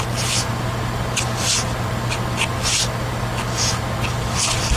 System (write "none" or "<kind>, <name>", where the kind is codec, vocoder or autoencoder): none